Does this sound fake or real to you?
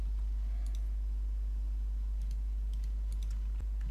real